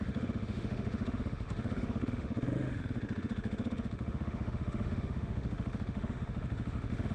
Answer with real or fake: fake